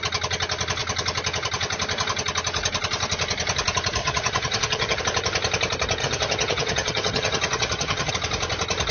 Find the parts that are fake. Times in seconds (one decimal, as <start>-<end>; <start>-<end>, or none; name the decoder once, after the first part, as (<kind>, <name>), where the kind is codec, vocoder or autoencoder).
4.0-5.0 (vocoder, HiFi-GAN); 6.0-8.1